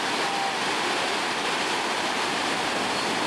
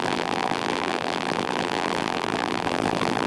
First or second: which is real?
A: first